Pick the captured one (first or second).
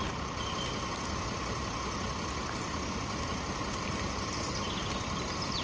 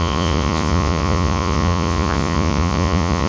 first